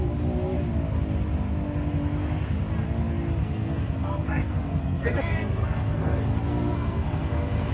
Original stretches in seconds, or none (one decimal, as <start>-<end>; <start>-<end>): 0.0-3.4